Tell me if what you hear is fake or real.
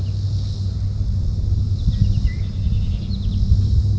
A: real